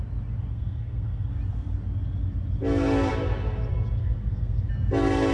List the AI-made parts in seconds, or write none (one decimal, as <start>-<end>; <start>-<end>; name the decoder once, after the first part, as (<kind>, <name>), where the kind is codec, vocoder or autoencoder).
0.5-1.3 (codec, SNAC); 3.7-4.7